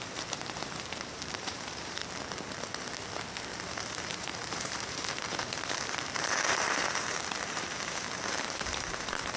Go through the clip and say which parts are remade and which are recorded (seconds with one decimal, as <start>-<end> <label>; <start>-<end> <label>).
0.0-2.0 remade; 2.0-3.9 recorded; 3.9-9.4 remade